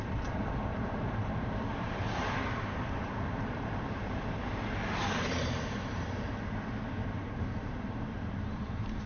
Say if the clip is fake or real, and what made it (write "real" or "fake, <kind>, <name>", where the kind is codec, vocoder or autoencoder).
fake, vocoder, BigVGAN v2